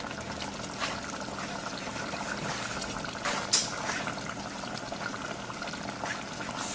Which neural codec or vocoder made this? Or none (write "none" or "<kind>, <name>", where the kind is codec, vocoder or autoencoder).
none